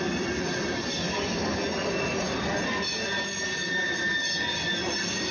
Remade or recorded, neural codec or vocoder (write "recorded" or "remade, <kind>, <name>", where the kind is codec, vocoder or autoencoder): recorded